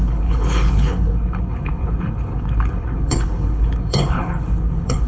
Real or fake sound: fake